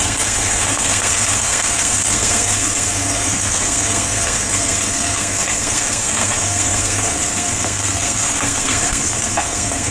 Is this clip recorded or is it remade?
remade